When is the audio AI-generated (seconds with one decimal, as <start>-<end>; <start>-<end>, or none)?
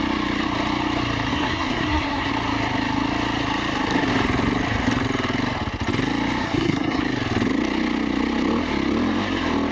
1.3-2.3; 6.4-7.0